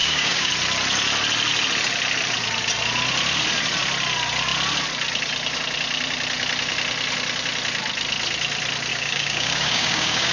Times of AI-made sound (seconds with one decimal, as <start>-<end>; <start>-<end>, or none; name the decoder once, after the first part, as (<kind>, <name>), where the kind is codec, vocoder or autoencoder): 0.0-0.5 (codec, DAC); 8.9-10.3

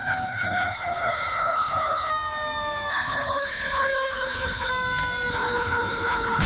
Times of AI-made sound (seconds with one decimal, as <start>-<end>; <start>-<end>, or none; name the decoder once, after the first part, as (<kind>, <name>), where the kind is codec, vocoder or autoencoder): 0.0-2.1 (codec, HILCodec); 2.9-4.7; 5.3-6.5

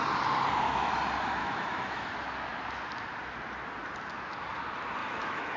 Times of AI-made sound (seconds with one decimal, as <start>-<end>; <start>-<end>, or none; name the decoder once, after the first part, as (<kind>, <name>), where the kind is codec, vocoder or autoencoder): 1.4-2.1 (autoencoder, DAC-VAE); 5.0-5.6

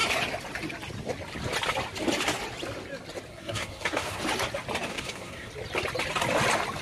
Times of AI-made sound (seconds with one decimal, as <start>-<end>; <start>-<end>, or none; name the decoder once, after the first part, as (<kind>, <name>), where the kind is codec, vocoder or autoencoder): 3.3-4.2 (codec, SNAC); 4.9-5.5